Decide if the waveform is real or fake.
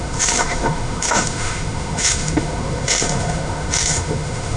fake